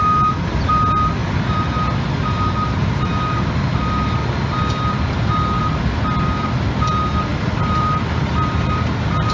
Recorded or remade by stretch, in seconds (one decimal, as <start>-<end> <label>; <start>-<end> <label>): 0.0-7.3 recorded; 7.3-8.9 remade; 8.9-9.3 recorded